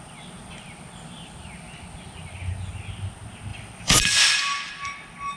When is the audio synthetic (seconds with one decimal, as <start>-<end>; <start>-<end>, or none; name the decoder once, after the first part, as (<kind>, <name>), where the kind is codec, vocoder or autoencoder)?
3.5-4.7 (vocoder, BigVGAN v2)